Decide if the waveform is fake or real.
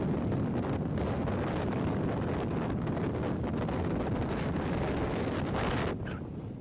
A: real